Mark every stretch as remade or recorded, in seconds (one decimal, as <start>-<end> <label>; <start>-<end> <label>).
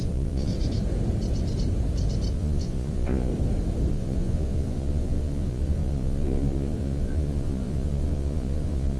0.0-0.5 remade; 0.5-2.3 recorded; 2.3-3.3 remade; 3.3-3.9 recorded; 3.9-9.0 remade